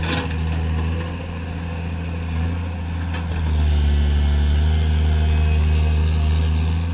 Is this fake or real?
real